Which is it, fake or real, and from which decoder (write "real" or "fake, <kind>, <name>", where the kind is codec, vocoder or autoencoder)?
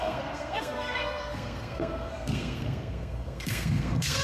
fake, codec, SNAC